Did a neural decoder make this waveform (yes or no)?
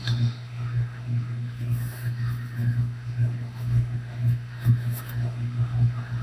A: yes